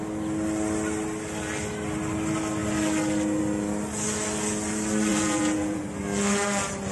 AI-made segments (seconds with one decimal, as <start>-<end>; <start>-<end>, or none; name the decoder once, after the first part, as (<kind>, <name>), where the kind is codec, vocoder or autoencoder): 5.1-5.8 (vocoder, Vocos)